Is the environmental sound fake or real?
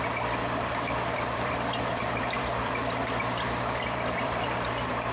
fake